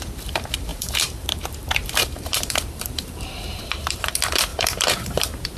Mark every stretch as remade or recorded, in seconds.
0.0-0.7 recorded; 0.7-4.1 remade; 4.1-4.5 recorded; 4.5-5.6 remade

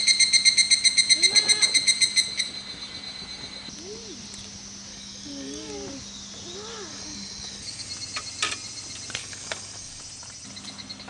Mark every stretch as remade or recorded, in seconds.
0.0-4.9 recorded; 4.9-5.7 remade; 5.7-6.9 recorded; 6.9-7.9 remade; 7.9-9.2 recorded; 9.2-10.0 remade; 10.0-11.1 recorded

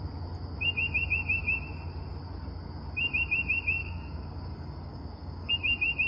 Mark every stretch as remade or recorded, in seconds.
0.0-3.8 recorded; 3.8-5.5 remade; 5.5-6.1 recorded

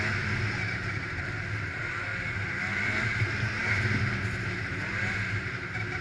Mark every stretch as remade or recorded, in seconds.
0.0-6.0 recorded

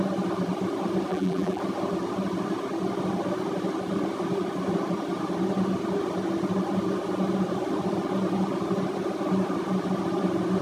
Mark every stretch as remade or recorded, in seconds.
0.0-1.1 recorded; 1.1-1.6 remade; 1.6-10.6 recorded

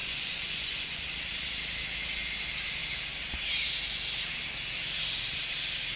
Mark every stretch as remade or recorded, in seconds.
0.0-1.0 remade; 1.0-6.0 recorded